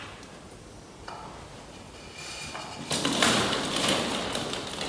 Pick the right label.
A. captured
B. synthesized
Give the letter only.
A